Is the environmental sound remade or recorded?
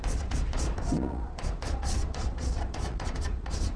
remade